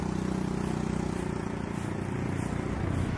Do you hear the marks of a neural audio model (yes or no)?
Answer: no